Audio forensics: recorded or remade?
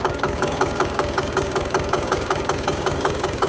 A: remade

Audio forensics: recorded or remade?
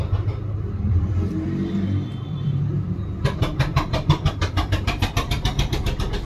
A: remade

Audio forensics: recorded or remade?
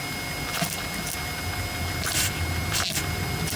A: recorded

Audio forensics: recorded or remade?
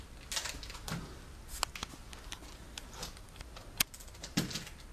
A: recorded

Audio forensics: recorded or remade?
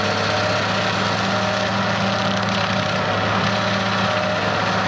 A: recorded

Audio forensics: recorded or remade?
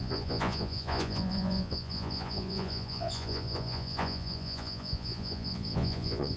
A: remade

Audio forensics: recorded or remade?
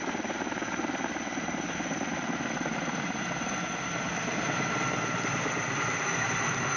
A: recorded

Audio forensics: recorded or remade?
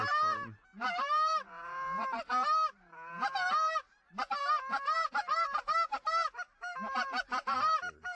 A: remade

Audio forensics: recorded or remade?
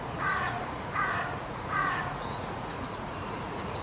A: remade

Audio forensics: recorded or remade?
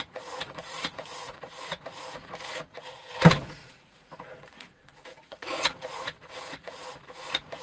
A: remade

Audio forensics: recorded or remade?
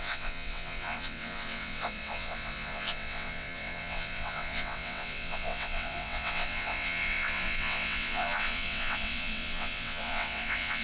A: remade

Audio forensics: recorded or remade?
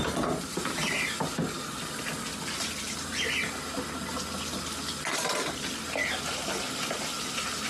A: recorded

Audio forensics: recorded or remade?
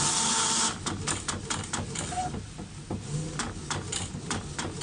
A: recorded